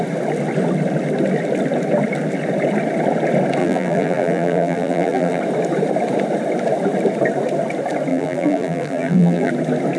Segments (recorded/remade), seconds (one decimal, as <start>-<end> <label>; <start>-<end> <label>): 0.0-3.6 recorded; 3.6-5.4 remade; 5.4-8.1 recorded; 8.1-9.5 remade; 9.5-10.0 recorded